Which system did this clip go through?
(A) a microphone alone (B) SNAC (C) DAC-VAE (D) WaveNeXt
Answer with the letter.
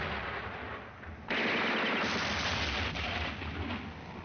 A